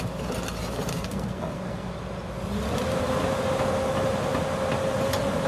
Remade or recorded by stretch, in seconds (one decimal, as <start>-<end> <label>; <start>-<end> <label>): 0.0-0.9 recorded; 0.9-1.9 remade; 1.9-5.5 recorded